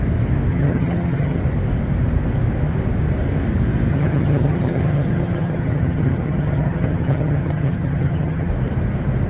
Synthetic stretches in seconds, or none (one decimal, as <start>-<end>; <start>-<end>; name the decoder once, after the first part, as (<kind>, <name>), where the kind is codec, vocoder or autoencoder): 0.5-1.4 (vocoder, HiFi-GAN); 3.9-8.5